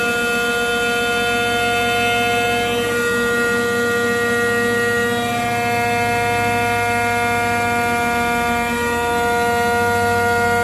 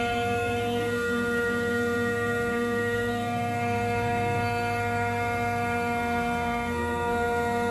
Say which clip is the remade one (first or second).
second